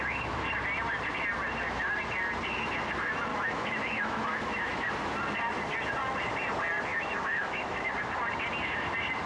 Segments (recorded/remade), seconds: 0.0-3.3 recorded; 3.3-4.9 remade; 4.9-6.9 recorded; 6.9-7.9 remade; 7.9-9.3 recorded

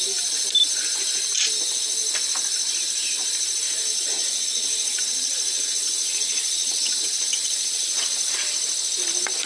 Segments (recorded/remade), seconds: 0.0-3.9 recorded; 3.9-8.3 remade; 8.3-9.5 recorded

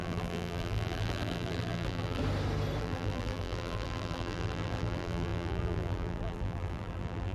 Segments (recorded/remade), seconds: 0.0-2.2 remade; 2.2-2.8 recorded; 2.8-7.3 remade

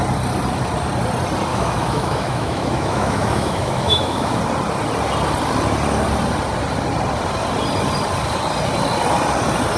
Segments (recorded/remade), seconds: 0.0-1.5 recorded; 1.5-4.4 remade; 4.4-9.8 recorded

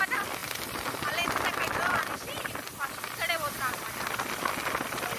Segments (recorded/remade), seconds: 0.0-5.2 recorded

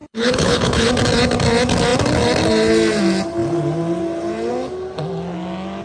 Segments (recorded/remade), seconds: 0.0-0.9 remade; 0.9-5.8 recorded

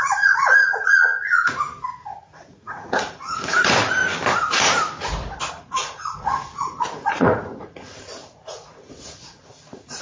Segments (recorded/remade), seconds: 0.0-4.0 remade; 4.0-5.5 recorded; 5.5-10.0 remade